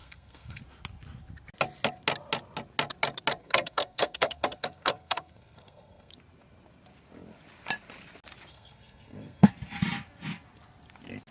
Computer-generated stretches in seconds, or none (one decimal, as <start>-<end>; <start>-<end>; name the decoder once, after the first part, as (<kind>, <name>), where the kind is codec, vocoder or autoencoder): 0.0-0.6 (codec, SNAC); 3.4-6.1; 8.5-9.5